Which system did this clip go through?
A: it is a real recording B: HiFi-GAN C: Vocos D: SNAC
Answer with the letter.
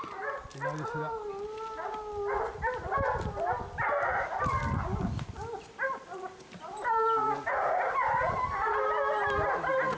A